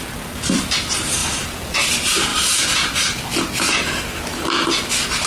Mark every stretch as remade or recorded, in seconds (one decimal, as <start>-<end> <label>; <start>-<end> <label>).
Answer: 0.0-5.3 recorded

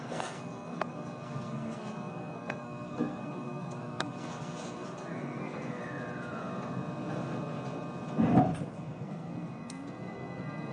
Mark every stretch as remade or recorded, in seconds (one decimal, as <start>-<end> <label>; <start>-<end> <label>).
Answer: 0.0-5.8 remade; 5.8-8.7 recorded; 8.7-10.7 remade

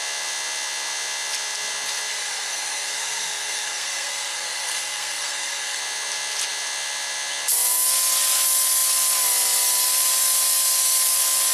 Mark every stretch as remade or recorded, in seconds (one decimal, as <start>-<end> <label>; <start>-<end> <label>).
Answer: 0.0-2.1 recorded; 2.1-5.8 remade; 5.8-11.5 recorded

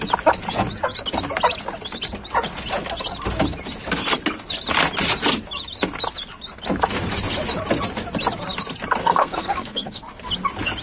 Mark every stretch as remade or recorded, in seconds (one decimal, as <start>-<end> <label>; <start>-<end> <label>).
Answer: 0.0-9.0 recorded; 9.0-10.0 remade; 10.0-10.8 recorded

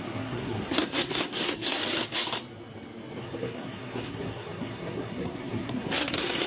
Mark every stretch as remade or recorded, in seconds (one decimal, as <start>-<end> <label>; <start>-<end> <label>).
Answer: 0.0-1.8 remade; 1.8-3.2 recorded; 3.2-6.5 remade

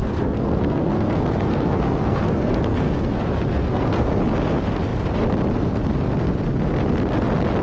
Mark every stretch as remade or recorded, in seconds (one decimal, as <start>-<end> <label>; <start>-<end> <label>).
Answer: 0.0-4.2 remade; 4.2-7.6 recorded